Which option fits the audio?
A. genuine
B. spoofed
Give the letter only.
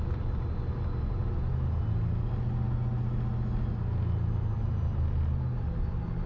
A